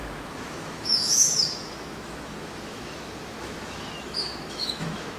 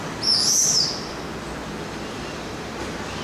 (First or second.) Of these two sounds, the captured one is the second